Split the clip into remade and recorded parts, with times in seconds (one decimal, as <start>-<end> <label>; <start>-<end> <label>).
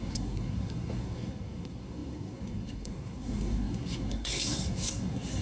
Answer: 0.0-5.4 remade